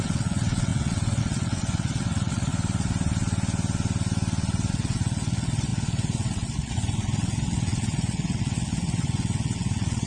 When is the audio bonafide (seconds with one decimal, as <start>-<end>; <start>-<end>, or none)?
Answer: 2.5-4.7